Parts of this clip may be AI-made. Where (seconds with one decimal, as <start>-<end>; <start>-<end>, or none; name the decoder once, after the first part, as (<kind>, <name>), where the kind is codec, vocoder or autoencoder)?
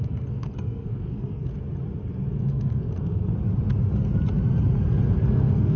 0.0-1.5 (codec, SNAC); 2.4-3.3; 5.2-5.8